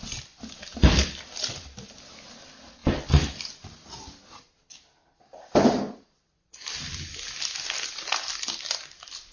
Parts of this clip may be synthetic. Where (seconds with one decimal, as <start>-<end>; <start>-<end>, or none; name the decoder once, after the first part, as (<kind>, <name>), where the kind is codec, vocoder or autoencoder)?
none